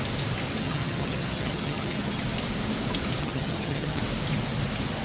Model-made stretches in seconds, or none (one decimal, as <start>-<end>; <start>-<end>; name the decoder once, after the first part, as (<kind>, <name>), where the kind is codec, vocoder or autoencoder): 0.6-2.2 (vocoder, HiFi-GAN); 3.2-4.0